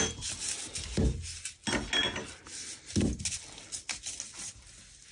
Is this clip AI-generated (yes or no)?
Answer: no